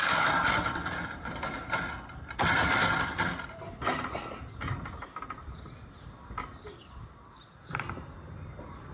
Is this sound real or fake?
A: real